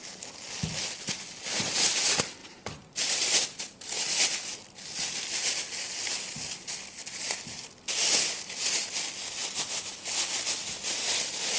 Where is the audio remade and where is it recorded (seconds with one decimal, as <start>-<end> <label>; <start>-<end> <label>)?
0.0-11.6 recorded